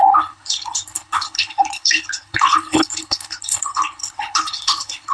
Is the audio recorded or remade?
remade